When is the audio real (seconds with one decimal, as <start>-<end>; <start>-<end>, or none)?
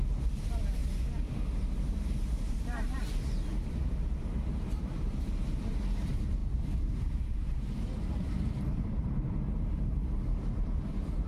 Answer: 0.8-1.8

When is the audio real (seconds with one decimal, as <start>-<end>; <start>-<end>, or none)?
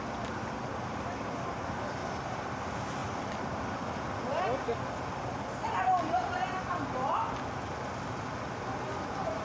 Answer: 0.0-2.0; 2.6-9.4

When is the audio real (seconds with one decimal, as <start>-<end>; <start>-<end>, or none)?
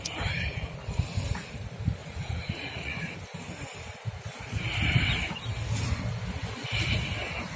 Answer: 0.0-2.0; 3.1-7.6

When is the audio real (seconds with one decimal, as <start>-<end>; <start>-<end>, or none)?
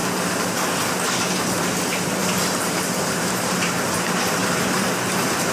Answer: 0.0-2.2; 3.7-4.4; 4.9-5.5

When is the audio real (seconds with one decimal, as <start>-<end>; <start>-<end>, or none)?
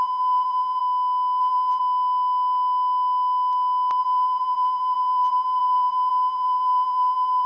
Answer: 0.8-1.4; 1.8-4.0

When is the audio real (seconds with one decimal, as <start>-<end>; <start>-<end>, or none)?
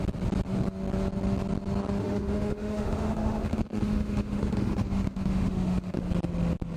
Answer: 0.0-2.0; 6.1-6.8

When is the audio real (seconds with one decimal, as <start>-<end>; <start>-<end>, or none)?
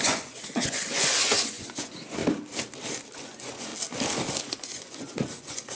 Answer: 2.2-3.2; 3.7-4.4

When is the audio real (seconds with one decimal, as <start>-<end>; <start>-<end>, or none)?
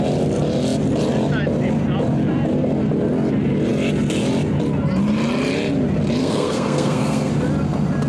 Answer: 0.0-6.2; 7.3-8.1